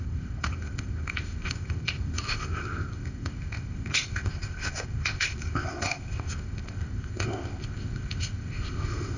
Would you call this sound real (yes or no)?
no